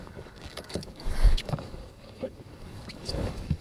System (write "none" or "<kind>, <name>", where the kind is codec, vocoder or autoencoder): codec, DAC